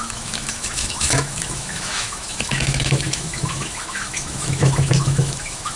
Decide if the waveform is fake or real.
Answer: fake